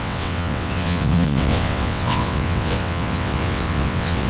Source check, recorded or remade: remade